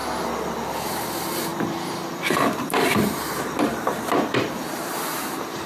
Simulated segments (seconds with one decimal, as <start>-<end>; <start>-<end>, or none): 0.9-5.7